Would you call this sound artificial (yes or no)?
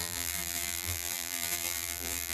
yes